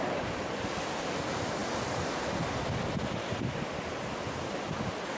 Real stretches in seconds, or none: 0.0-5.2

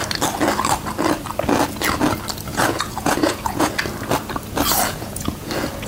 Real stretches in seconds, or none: 0.0-2.5; 3.7-4.9; 5.5-5.9

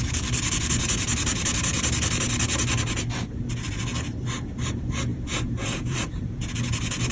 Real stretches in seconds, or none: 0.0-5.1; 6.5-7.1

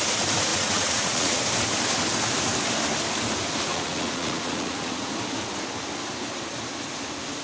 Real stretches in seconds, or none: 0.0-0.5; 1.4-3.7; 5.1-7.4